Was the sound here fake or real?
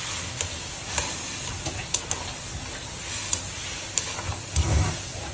real